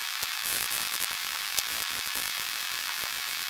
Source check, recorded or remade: remade